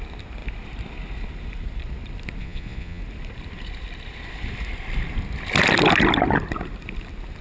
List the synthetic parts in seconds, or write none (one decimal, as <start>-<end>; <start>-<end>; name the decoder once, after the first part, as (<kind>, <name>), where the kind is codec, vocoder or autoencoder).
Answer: 2.4-3.0 (vocoder, Vocos)